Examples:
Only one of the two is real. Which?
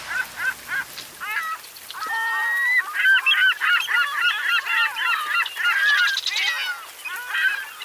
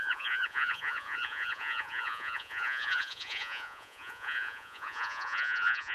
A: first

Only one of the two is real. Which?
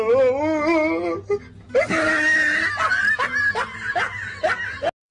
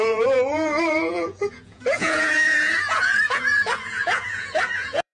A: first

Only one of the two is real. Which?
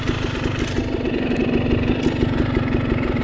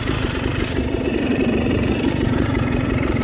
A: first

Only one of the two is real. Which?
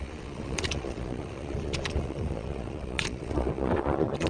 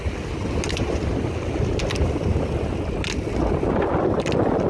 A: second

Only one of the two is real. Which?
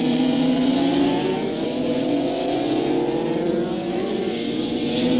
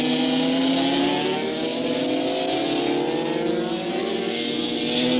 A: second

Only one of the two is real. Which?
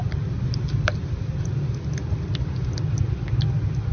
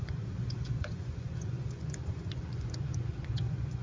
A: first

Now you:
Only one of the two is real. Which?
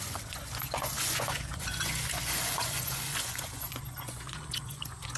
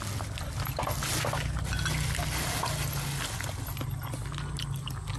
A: second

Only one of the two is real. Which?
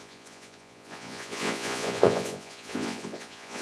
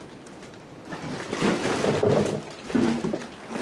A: second